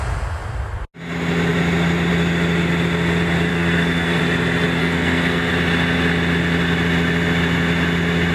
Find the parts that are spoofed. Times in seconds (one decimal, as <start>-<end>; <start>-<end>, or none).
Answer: 3.5-4.2; 4.8-5.5